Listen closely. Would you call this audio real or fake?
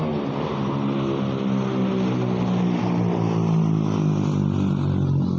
real